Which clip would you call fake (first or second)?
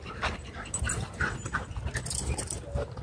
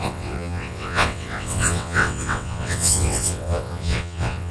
second